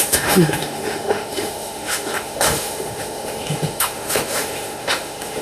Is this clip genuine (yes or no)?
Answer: no